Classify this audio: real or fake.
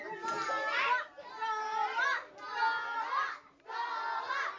real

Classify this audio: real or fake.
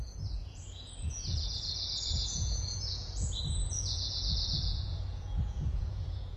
fake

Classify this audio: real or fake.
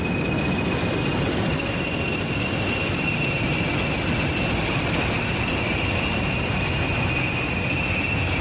real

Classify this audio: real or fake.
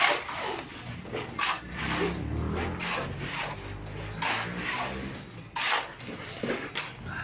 real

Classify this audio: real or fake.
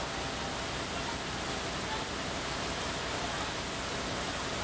real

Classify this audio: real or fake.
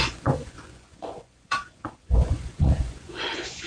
fake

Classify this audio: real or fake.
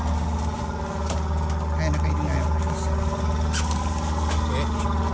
real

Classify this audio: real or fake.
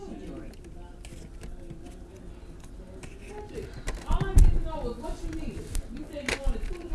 real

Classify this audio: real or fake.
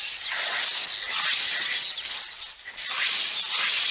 real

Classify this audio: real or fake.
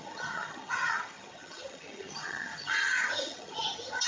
fake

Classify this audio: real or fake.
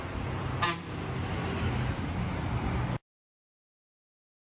real